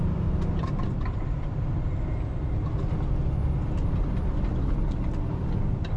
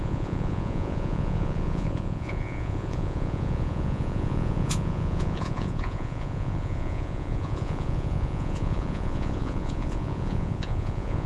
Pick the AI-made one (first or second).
second